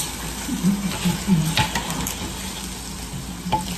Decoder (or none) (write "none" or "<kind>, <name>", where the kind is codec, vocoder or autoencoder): none